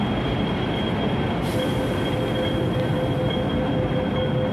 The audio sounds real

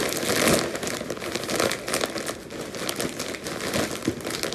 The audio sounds real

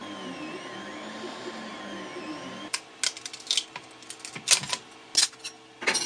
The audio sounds real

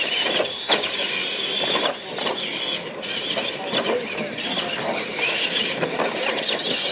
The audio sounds fake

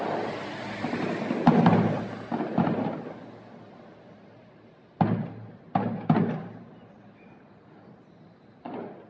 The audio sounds real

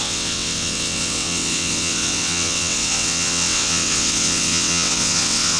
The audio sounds fake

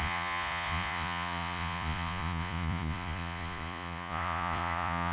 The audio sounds fake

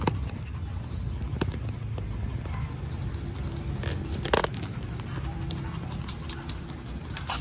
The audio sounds real